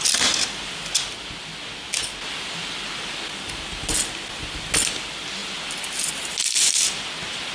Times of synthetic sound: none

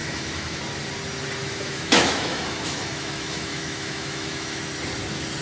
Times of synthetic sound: 0.0-0.6 (autoencoder, DAC-VAE); 1.4-4.6

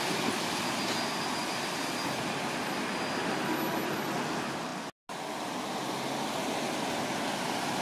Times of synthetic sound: none

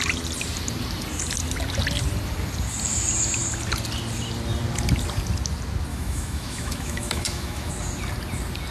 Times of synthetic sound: 5.9-7.7 (autoencoder, DAC-VAE)

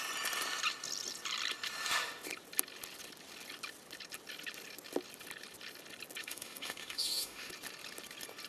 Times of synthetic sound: 6.2-7.5 (autoencoder, DAC-VAE)

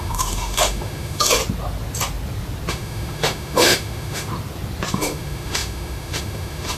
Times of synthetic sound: 0.0-1.4 (autoencoder, DAC-VAE); 2.7-4.3; 4.9-6.8

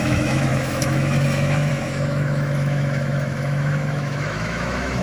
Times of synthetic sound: 0.0-5.0 (autoencoder, DAC-VAE)